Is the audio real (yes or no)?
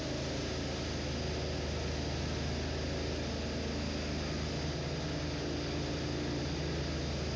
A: yes